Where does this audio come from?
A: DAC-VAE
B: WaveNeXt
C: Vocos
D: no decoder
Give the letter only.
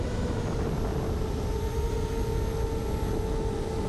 D